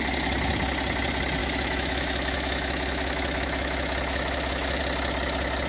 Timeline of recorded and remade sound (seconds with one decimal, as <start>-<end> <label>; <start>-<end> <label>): 0.0-1.4 recorded; 1.4-4.8 remade; 4.8-5.7 recorded